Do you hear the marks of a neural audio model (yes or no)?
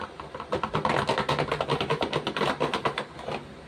no